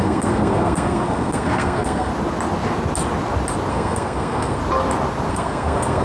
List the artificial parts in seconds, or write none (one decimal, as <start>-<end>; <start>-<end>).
0.0-2.1; 3.7-4.6; 5.3-6.0